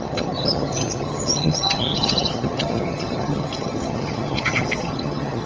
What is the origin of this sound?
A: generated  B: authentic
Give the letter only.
A